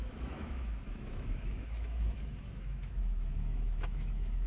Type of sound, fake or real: fake